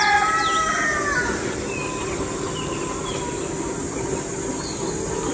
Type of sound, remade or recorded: recorded